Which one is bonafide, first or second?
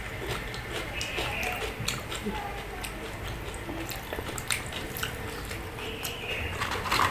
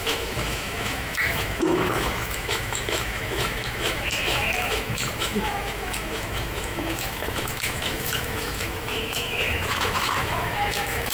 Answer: first